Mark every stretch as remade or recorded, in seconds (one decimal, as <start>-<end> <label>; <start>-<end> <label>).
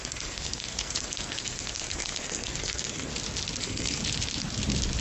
0.0-3.1 remade; 3.1-3.6 recorded; 3.6-4.0 remade; 4.0-5.0 recorded